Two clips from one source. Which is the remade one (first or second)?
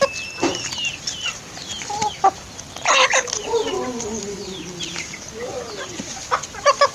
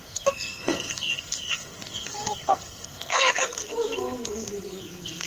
second